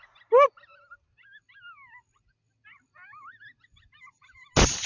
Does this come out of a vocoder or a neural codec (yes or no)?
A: no